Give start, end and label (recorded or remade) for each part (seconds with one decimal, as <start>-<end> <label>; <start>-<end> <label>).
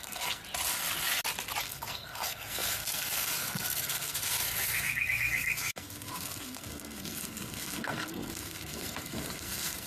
0.0-0.4 remade; 0.4-1.6 recorded; 1.6-9.9 remade